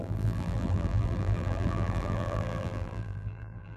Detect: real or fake fake